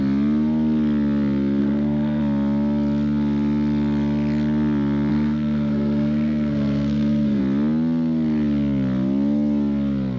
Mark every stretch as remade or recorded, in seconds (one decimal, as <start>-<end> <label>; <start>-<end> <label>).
0.0-1.6 recorded; 1.6-2.2 remade; 2.2-5.1 recorded; 5.1-7.4 remade; 7.4-10.2 recorded